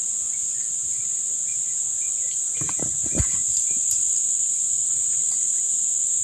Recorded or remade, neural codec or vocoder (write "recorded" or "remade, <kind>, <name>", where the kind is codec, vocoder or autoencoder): recorded